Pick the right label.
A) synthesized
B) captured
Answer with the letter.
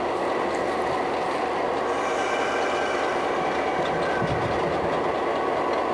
B